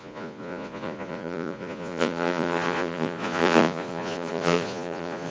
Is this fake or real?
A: fake